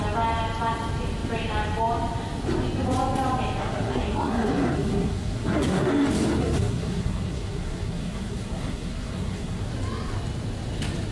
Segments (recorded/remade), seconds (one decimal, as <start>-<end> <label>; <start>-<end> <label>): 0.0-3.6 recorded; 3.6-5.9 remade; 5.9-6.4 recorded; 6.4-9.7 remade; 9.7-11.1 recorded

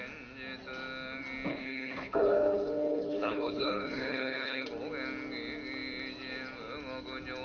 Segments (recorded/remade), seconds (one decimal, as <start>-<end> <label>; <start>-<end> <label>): 0.0-1.5 recorded; 1.5-4.7 remade; 4.7-7.4 recorded

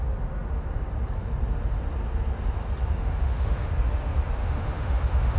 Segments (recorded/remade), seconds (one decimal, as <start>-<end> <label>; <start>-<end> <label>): 0.0-3.0 recorded; 3.0-3.7 remade; 3.7-4.4 recorded; 4.4-5.4 remade

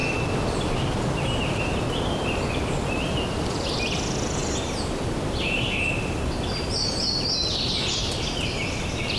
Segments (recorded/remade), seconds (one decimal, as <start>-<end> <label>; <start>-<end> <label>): 0.0-0.7 remade; 0.7-9.2 recorded